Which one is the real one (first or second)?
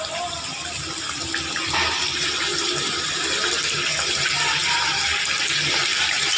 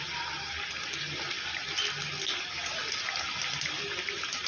second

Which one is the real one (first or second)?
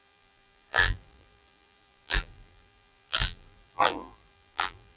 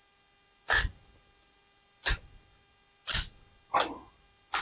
second